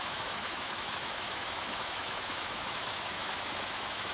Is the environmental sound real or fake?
fake